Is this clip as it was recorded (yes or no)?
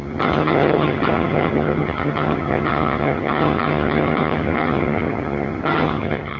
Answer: no